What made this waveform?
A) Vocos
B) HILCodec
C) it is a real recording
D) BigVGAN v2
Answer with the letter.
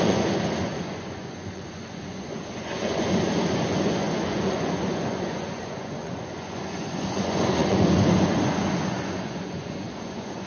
A